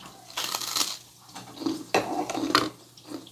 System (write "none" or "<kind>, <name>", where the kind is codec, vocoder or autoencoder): none